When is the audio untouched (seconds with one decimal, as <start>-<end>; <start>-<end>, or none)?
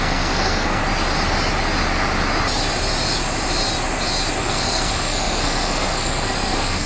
0.8-4.4